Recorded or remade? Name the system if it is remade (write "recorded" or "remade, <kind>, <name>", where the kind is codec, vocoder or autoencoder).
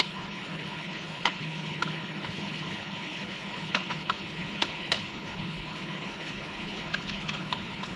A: remade, codec, HILCodec